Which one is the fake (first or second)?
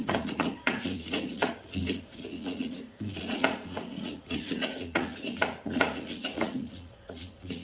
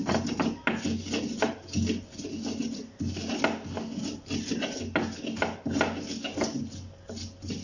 first